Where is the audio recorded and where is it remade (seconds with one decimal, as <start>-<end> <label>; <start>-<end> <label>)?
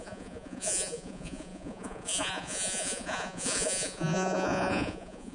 0.0-5.3 remade